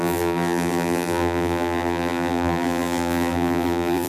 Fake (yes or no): yes